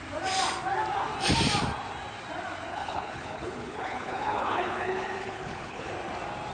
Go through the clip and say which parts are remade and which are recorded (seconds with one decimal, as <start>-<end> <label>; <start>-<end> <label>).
0.0-2.7 recorded; 2.7-5.9 remade; 5.9-6.5 recorded